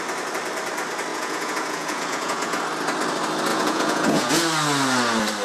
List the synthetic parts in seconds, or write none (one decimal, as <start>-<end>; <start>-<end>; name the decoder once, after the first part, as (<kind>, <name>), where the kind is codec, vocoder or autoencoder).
1.1-2.6 (vocoder, Vocos); 3.5-4.3